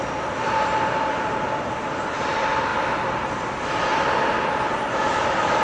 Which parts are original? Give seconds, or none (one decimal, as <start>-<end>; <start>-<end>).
0.0-5.6